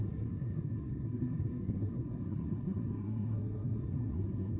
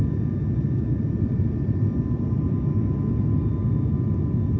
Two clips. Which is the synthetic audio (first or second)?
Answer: first